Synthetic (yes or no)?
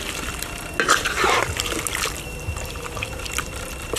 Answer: no